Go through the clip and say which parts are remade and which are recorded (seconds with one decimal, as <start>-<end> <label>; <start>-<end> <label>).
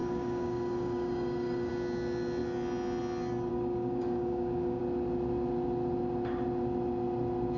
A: 0.0-1.7 remade; 1.7-3.5 recorded; 3.5-4.8 remade; 4.8-7.6 recorded